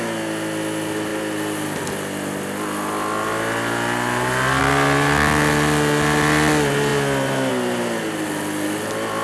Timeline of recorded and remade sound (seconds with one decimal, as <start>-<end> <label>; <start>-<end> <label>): 0.0-9.2 recorded